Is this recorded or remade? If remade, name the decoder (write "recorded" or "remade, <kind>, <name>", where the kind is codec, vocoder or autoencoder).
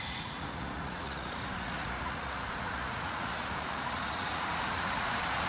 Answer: remade, vocoder, Vocos